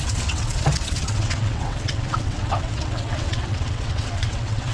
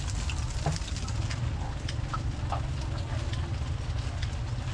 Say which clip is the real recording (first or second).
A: second